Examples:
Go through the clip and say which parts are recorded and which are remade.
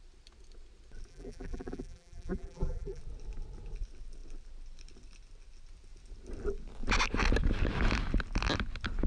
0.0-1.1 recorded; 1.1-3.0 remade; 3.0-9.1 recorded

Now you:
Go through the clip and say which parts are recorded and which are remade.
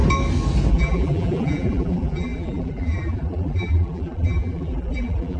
0.0-0.7 recorded; 0.7-5.4 remade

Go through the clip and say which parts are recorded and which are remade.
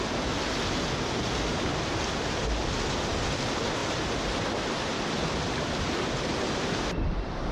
0.0-1.5 recorded; 1.5-2.1 remade; 2.1-3.8 recorded; 3.8-6.5 remade; 6.5-7.5 recorded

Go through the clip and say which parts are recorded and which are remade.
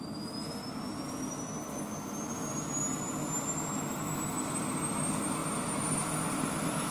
0.0-6.9 recorded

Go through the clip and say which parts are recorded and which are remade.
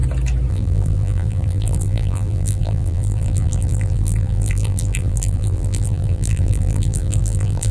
0.0-0.5 recorded; 0.5-7.7 remade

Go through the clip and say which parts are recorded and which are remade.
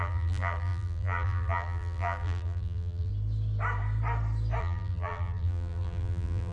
0.0-3.1 remade; 3.1-4.6 recorded; 4.6-6.5 remade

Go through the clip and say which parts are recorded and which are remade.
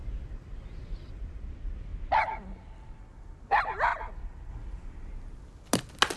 0.0-1.5 remade; 1.5-3.9 recorded; 3.9-4.5 remade; 4.5-6.2 recorded